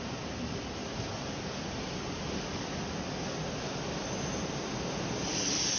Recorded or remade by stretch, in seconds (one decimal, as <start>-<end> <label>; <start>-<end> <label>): 0.0-5.8 recorded